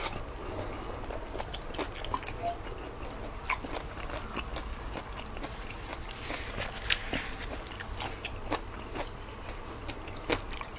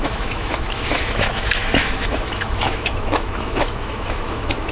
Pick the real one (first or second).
first